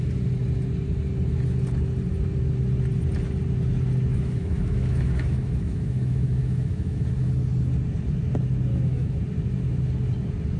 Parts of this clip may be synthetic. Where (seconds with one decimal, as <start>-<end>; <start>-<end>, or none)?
4.1-7.2; 8.7-9.2

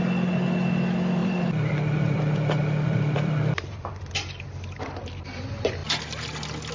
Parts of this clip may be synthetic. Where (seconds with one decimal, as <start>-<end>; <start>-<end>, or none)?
1.2-5.2

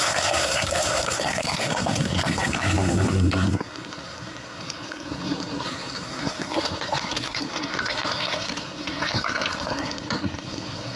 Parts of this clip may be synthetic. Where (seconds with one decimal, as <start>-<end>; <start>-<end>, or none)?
0.0-11.0

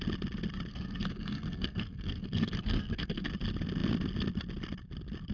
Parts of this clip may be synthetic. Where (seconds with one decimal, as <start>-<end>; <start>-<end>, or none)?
0.7-3.3

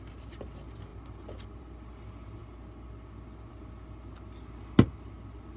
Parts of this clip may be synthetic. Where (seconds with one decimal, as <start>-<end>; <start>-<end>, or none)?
none

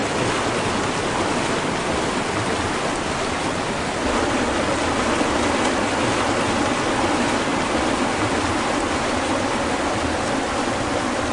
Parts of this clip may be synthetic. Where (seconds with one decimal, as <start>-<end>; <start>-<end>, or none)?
none

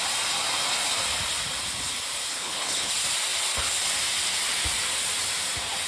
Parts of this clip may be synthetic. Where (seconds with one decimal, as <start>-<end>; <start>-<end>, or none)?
2.3-2.9